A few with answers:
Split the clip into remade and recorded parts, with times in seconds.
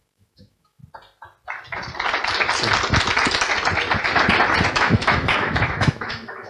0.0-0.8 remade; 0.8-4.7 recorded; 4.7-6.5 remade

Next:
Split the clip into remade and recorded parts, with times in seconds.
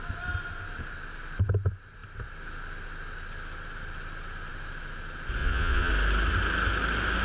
0.0-5.4 recorded; 5.4-5.9 remade; 5.9-7.2 recorded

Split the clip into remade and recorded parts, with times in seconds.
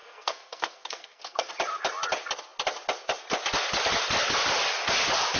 0.0-1.5 remade; 1.5-5.4 recorded